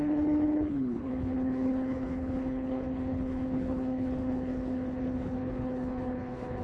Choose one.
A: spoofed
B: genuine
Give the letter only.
A